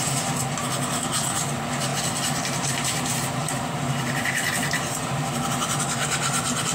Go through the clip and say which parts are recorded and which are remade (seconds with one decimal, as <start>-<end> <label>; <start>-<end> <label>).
0.0-1.9 recorded; 1.9-5.8 remade; 5.8-6.7 recorded